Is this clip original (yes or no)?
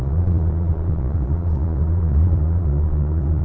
no